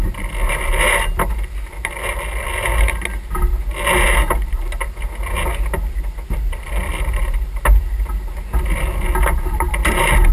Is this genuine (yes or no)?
yes